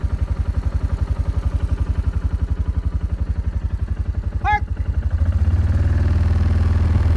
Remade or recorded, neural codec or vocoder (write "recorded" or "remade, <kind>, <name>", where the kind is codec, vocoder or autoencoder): recorded